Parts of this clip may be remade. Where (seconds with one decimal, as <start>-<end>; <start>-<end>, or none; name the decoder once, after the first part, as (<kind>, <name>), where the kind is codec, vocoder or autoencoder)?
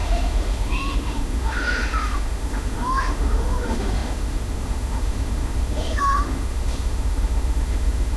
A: 0.0-8.2 (autoencoder, DAC-VAE)